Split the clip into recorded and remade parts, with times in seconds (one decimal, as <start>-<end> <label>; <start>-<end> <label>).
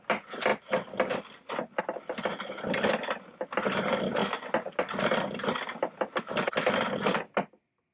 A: 0.0-7.9 recorded